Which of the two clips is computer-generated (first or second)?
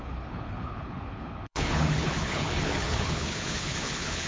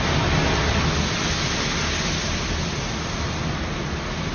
first